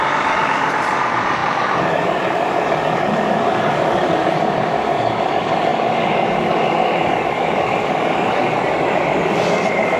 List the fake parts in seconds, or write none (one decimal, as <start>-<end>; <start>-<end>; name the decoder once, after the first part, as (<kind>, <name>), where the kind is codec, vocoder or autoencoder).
0.0-10.0 (codec, DAC)